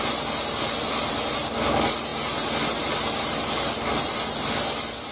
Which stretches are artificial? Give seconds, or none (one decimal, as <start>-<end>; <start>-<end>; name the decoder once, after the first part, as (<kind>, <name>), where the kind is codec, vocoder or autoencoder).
none